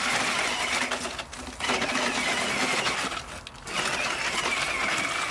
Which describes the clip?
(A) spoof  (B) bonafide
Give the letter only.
B